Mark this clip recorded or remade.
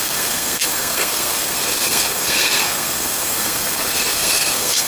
remade